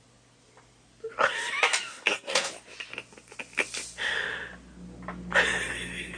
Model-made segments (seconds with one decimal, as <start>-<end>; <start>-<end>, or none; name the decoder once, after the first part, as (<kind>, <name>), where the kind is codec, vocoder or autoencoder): 1.9-2.5 (codec, SNAC)